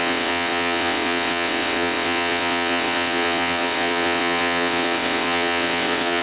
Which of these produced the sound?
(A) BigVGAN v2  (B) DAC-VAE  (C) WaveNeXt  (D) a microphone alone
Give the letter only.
C